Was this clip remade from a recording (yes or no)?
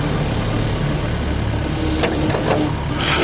no